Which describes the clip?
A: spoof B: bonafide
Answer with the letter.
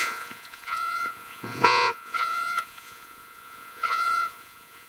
A